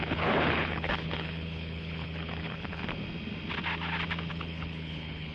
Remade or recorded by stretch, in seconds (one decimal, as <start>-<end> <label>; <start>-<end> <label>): 0.0-2.8 remade; 2.8-4.3 recorded; 4.3-5.3 remade